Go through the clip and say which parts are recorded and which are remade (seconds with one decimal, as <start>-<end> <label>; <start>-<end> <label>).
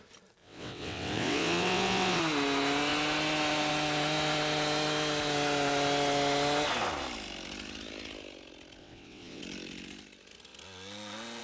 0.0-0.4 recorded; 0.4-2.2 remade; 2.2-8.8 recorded; 8.8-9.4 remade; 9.4-11.4 recorded